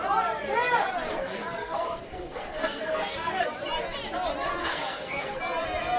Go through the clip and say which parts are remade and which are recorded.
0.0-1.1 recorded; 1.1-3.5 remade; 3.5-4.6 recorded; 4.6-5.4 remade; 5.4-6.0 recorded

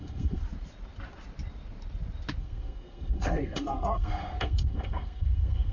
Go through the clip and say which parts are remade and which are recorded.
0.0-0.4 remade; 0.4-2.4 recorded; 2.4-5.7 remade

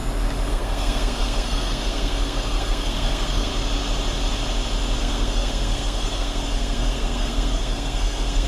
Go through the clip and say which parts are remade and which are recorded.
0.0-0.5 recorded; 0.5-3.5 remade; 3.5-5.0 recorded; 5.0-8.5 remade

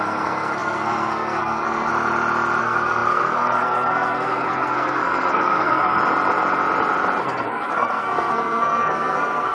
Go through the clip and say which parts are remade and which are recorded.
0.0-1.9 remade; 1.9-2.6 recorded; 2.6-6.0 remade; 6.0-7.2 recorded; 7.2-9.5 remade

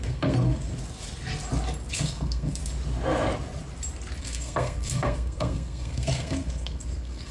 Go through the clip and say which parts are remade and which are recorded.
0.0-0.7 remade; 0.7-1.9 recorded; 1.9-2.6 remade; 2.6-4.2 recorded; 4.2-7.3 remade